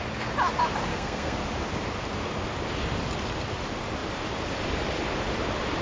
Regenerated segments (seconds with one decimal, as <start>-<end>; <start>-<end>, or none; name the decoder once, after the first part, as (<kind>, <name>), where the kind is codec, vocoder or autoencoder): 0.9-1.4 (codec, SNAC)